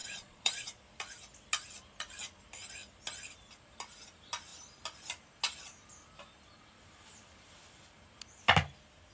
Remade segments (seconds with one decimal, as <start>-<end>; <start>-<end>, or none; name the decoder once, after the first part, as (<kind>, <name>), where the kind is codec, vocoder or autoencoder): 0.0-0.8 (vocoder, Vocos)